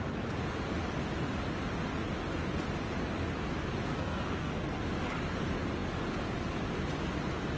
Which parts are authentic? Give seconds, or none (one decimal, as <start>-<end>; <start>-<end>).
0.0-3.9; 4.8-7.6